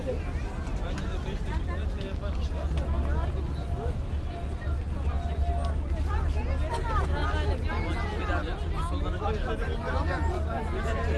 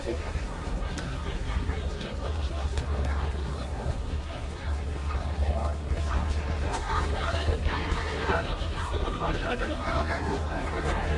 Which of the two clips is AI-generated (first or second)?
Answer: second